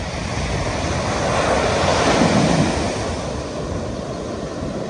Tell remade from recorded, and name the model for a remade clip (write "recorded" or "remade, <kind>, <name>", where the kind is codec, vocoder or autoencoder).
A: recorded